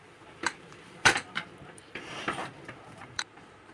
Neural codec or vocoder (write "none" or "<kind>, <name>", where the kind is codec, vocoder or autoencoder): vocoder, BigVGAN v2